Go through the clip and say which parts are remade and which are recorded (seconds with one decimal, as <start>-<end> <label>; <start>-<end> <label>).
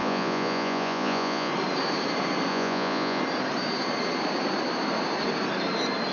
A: 0.0-1.5 remade; 1.5-2.5 recorded; 2.5-3.2 remade; 3.2-6.1 recorded